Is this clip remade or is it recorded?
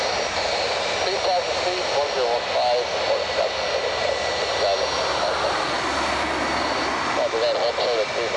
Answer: recorded